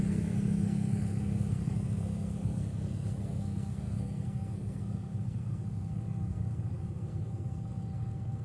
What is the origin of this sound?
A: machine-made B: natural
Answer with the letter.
A